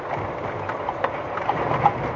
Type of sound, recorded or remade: recorded